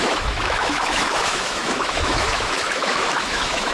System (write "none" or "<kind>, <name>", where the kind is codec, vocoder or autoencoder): autoencoder, DAC-VAE